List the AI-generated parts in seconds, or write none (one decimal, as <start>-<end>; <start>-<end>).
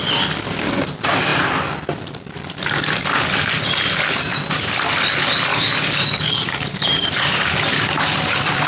5.5-8.7